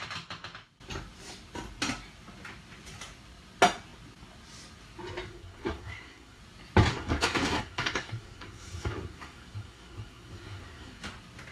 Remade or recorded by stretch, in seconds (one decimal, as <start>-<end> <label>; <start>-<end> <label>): 0.0-5.3 recorded; 5.3-6.4 remade; 6.4-6.9 recorded; 6.9-11.0 remade; 11.0-11.5 recorded